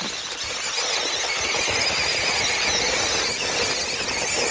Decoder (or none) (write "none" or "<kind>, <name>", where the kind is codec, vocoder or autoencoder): none